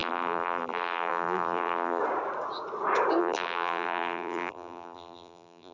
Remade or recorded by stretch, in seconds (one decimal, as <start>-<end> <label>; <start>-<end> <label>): 0.0-2.0 remade; 2.0-3.2 recorded; 3.2-5.7 remade